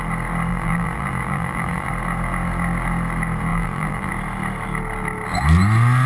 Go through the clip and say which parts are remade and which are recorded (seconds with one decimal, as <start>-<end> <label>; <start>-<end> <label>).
0.0-0.5 recorded; 0.5-1.9 remade; 1.9-3.5 recorded; 3.5-4.1 remade; 4.1-6.1 recorded